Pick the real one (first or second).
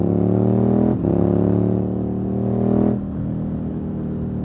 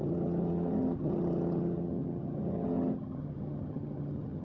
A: first